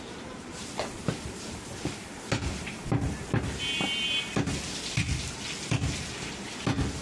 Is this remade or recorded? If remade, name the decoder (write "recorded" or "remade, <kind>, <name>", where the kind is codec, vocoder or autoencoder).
remade, vocoder, BigVGAN v2